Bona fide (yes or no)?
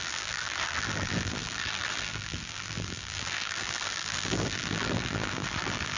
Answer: no